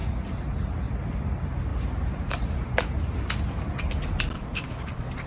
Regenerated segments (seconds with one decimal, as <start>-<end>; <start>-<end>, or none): none

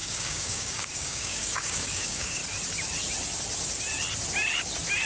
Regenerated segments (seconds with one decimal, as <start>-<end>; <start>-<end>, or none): 0.0-2.4